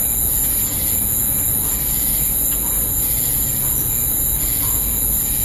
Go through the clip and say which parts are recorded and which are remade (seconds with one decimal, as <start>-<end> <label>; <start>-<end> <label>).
0.0-5.4 recorded